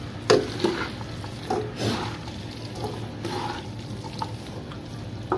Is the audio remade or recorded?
recorded